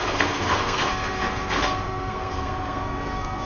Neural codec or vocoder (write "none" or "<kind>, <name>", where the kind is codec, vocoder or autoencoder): codec, SNAC